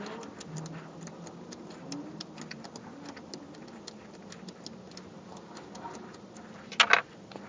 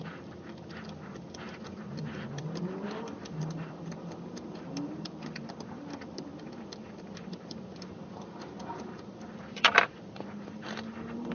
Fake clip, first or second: second